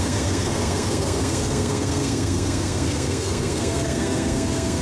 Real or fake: fake